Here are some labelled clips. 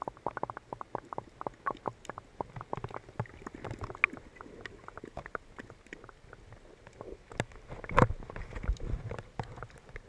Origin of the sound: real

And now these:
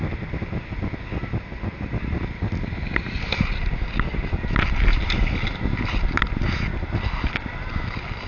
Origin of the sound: real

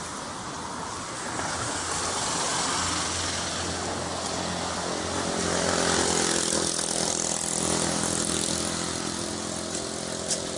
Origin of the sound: real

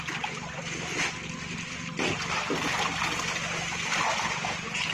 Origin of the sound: real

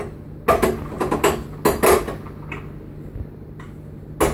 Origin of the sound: real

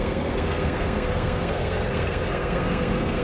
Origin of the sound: fake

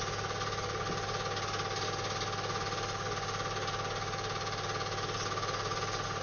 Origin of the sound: real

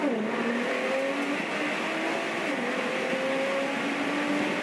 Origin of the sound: real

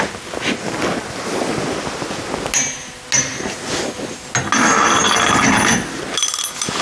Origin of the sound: real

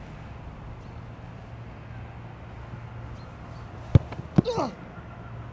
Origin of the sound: real